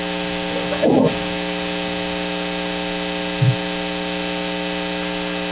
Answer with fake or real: real